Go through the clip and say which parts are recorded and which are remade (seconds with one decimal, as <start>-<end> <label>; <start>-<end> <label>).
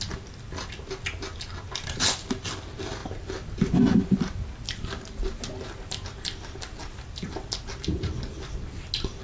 0.0-9.2 recorded